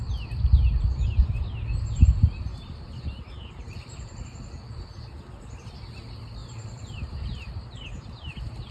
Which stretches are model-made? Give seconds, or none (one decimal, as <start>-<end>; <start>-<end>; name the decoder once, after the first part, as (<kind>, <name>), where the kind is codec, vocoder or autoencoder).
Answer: 0.9-4.2 (vocoder, BigVGAN v2); 6.4-8.7